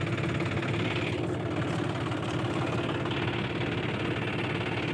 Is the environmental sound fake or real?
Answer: real